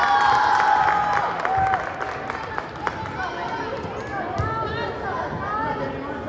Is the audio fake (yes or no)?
no